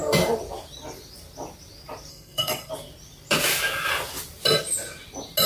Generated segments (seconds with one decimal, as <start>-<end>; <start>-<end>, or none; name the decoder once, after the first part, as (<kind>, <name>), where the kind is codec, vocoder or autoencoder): 2.1-2.7 (codec, SNAC)